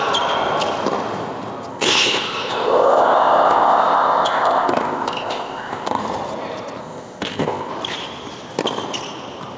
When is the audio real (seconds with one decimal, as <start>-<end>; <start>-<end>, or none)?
0.0-1.7; 6.0-6.8; 7.7-9.6